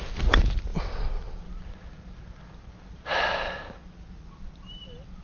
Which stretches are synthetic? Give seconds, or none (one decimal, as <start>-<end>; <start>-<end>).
none